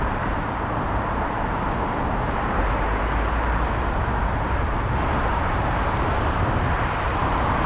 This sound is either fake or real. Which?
fake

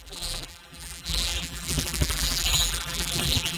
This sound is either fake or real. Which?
fake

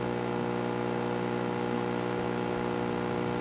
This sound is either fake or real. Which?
real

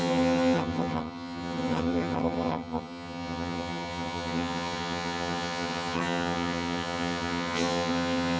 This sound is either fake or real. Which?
fake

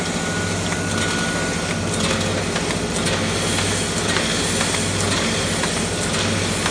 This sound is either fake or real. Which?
real